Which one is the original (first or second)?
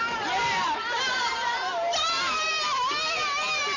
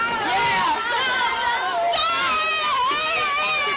second